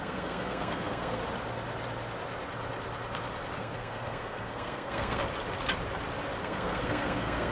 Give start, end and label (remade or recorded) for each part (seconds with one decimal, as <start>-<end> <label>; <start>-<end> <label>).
0.0-1.2 remade; 1.2-3.6 recorded; 3.6-5.2 remade; 5.2-6.4 recorded; 6.4-7.5 remade